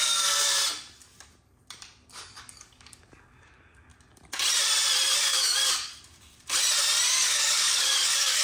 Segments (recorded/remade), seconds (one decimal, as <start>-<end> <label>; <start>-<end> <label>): 0.0-0.6 remade; 0.6-2.1 recorded; 2.1-3.9 remade; 3.9-5.2 recorded; 5.2-5.9 remade; 5.9-7.2 recorded; 7.2-8.4 remade